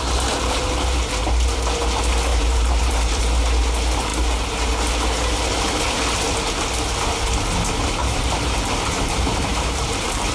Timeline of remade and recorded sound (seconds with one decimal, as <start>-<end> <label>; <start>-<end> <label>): 0.0-2.3 recorded; 2.3-3.4 remade; 3.4-8.0 recorded; 8.0-10.3 remade